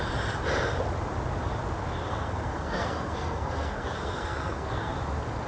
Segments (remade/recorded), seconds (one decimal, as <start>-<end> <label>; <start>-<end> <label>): 0.0-2.1 recorded; 2.1-4.9 remade; 4.9-5.5 recorded